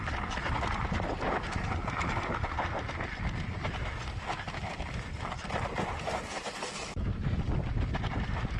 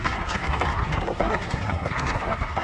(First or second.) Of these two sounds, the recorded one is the first